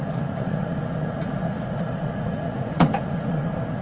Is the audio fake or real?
fake